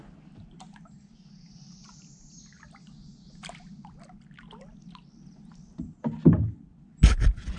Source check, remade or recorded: recorded